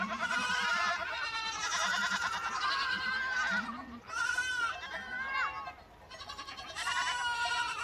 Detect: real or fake real